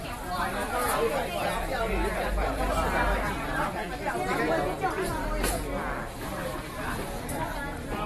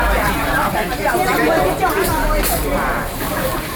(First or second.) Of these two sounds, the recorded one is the first